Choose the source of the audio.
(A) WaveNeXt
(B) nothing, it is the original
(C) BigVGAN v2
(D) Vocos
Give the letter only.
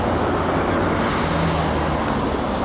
B